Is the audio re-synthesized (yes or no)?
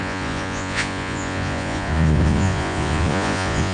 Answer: yes